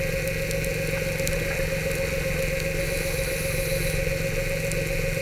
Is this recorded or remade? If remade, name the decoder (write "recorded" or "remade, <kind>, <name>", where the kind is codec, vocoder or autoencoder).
recorded